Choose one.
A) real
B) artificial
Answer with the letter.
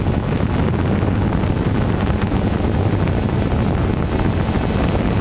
A